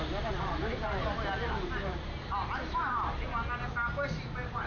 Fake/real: real